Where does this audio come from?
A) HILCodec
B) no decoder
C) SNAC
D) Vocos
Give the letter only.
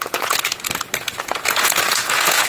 D